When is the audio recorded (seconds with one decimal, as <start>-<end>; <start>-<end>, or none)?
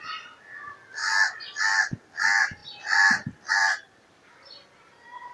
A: 0.0-5.3